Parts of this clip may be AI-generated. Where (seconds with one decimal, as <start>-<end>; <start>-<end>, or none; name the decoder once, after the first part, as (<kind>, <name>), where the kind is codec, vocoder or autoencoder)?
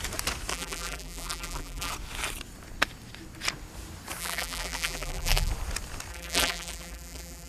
0.5-1.9 (vocoder, BigVGAN v2); 4.2-5.5; 6.1-7.5